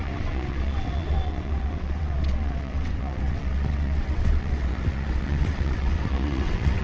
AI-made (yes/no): yes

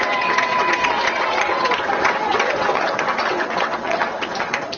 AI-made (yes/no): yes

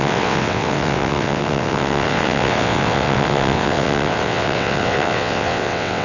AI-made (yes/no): yes